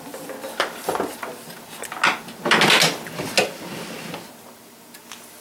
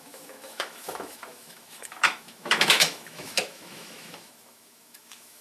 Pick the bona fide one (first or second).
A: first